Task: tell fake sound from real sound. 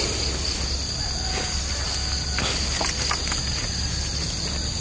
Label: real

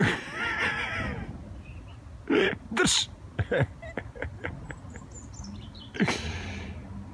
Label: real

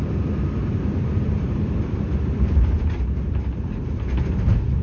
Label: fake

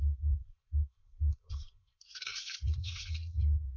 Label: fake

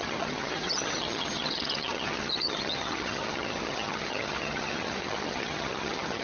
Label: fake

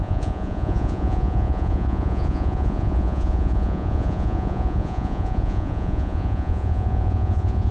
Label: fake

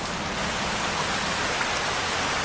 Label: real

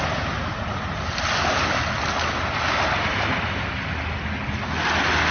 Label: real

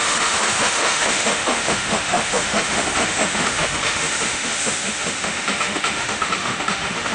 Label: fake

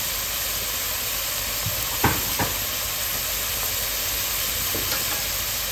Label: real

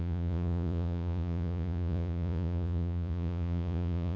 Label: fake